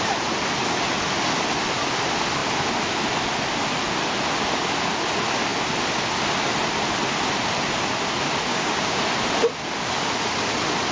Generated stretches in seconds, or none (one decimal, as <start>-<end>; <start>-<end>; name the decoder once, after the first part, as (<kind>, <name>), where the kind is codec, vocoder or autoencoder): 8.5-9.0 (codec, DAC)